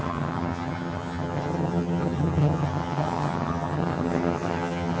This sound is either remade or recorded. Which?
remade